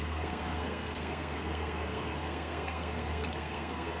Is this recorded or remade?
remade